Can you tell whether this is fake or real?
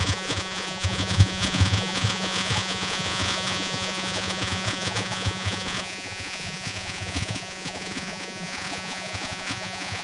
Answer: fake